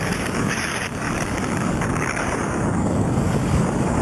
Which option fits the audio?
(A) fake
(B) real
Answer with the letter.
A